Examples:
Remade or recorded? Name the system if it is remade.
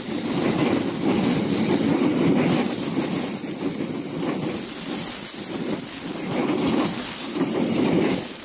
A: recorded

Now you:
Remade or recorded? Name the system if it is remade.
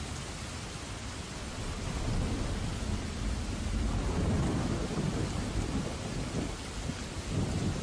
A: recorded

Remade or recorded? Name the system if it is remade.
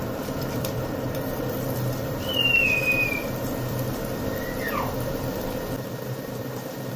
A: remade, vocoder, BigVGAN v2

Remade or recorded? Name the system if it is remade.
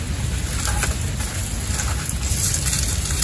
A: recorded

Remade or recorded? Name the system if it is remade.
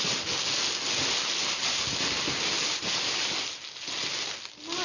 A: recorded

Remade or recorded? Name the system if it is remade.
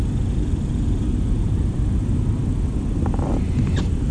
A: recorded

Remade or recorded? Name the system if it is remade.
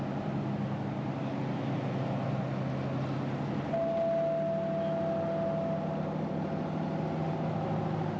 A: recorded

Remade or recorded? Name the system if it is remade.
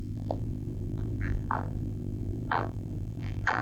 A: remade, vocoder, BigVGAN v2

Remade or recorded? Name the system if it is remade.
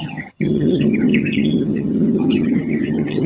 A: remade, vocoder, HiFi-GAN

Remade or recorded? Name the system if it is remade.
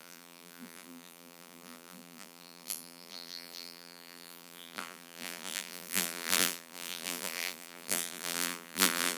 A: remade, vocoder, BigVGAN v2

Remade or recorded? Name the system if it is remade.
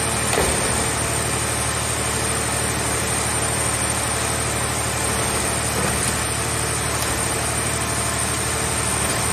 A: recorded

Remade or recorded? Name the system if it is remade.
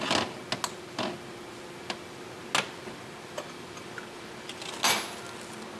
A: recorded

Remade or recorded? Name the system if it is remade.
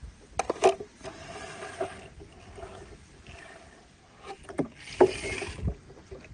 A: recorded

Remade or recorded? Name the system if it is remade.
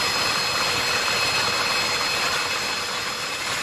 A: recorded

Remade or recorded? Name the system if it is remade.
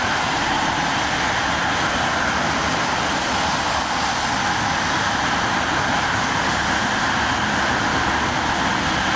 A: recorded